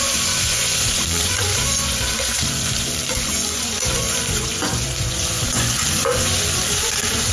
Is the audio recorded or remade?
remade